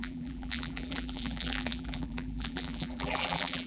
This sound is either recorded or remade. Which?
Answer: remade